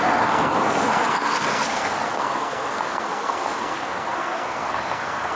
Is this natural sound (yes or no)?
no